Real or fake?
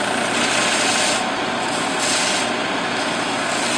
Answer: real